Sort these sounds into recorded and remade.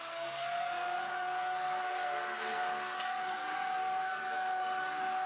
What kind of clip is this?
remade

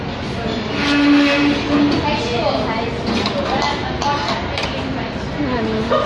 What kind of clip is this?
recorded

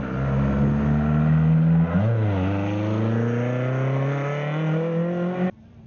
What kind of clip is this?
recorded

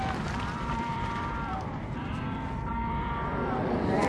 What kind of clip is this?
remade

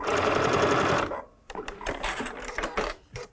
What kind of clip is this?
remade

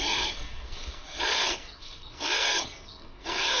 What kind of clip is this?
remade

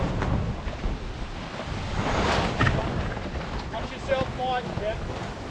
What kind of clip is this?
recorded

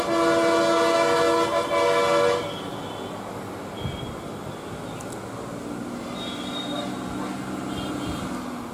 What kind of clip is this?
recorded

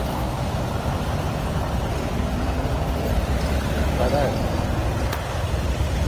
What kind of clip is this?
recorded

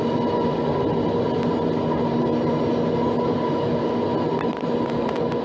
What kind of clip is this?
recorded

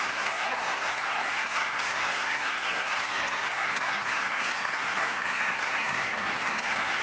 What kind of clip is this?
remade